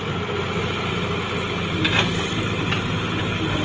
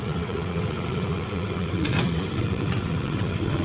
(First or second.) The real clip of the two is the first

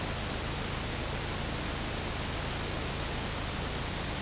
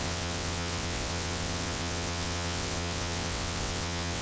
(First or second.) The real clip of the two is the first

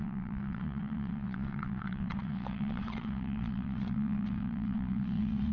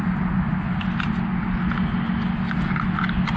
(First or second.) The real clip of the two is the second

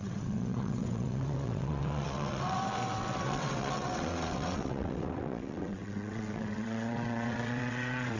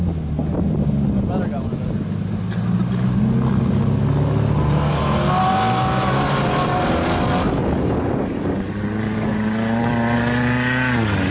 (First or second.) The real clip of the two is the second